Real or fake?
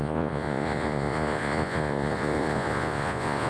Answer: fake